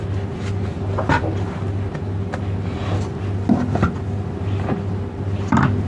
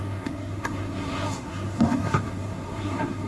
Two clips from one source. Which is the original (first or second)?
first